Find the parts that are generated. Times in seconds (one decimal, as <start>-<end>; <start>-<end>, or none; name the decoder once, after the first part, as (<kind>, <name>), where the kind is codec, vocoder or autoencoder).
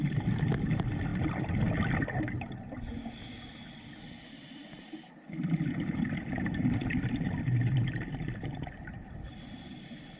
none